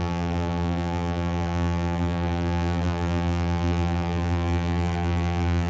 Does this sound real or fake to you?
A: fake